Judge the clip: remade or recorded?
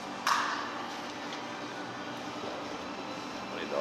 recorded